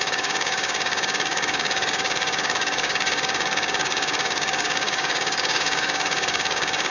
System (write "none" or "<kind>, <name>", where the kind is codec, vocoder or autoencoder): codec, DAC